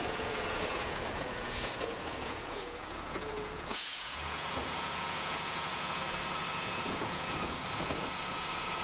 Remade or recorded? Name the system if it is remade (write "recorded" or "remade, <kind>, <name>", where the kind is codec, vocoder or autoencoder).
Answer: remade, vocoder, Vocos